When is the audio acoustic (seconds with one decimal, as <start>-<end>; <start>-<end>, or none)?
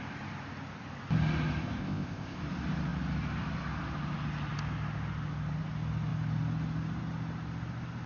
0.0-1.8; 2.4-8.1